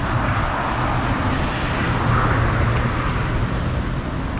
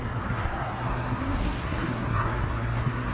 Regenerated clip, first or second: second